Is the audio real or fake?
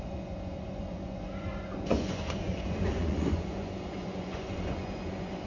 fake